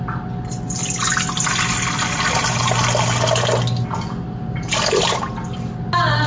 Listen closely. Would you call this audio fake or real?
real